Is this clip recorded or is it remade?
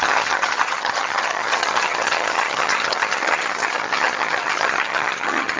remade